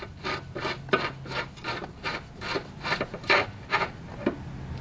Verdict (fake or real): real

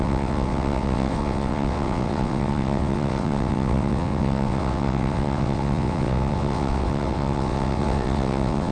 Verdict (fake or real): fake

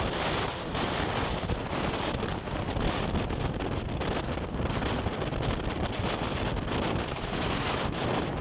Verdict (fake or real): real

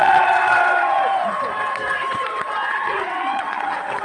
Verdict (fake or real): fake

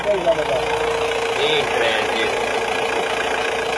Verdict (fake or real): real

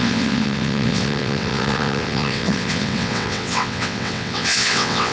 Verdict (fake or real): fake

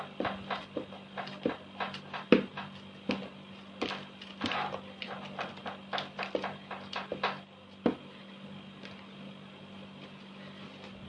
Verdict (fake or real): real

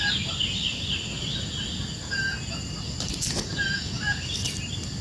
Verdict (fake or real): real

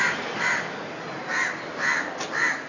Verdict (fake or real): real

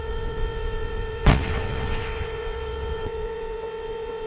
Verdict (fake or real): fake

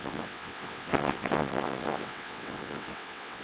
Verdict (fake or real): fake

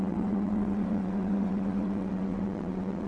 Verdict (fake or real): fake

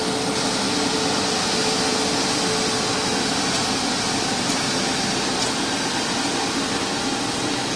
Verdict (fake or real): real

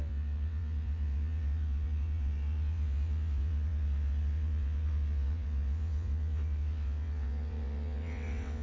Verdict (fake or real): fake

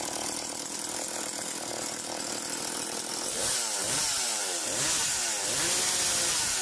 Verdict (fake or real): real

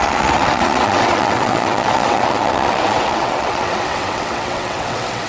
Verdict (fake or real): fake